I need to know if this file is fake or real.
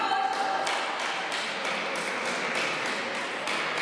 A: real